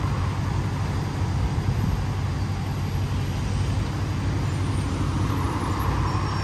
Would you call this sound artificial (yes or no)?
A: no